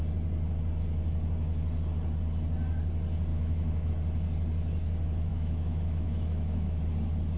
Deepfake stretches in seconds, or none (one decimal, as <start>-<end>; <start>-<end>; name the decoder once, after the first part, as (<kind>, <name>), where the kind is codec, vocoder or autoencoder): 3.3-3.9 (autoencoder, DAC-VAE); 5.3-6.8